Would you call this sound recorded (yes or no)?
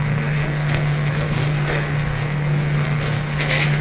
no